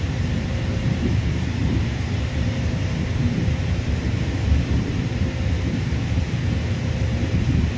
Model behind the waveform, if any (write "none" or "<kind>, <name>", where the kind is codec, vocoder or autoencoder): vocoder, BigVGAN v2